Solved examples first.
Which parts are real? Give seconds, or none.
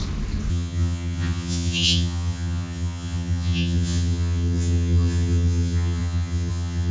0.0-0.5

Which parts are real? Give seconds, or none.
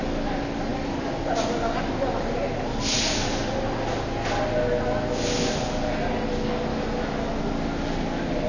0.0-6.7; 7.4-8.5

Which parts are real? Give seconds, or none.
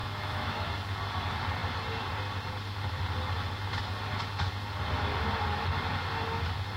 0.7-6.8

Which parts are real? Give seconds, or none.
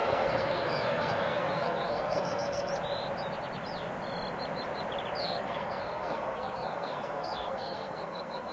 2.7-5.2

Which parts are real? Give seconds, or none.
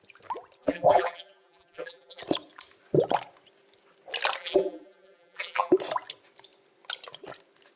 0.0-0.6; 2.2-4.4; 5.7-7.8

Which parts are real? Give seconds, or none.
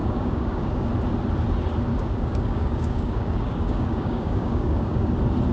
0.9-1.9; 5.1-5.5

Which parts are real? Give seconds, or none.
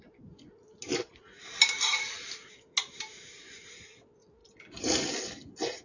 0.0-0.9; 2.0-5.8